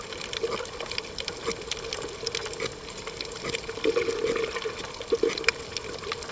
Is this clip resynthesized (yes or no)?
no